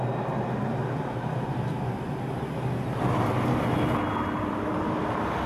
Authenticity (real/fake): real